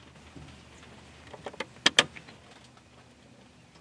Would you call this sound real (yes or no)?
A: yes